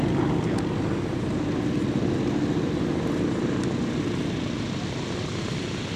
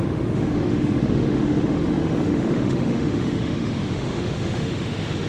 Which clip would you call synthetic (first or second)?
second